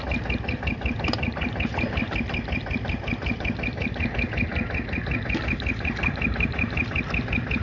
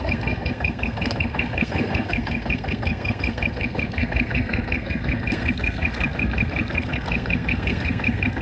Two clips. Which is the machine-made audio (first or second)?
second